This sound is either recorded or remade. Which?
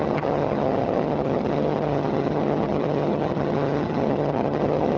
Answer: remade